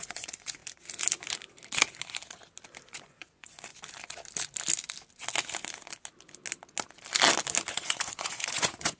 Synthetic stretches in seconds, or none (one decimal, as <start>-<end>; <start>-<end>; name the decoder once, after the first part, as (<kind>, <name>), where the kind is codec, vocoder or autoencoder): 0.0-0.6 (vocoder, Vocos); 2.9-3.7; 7.7-9.0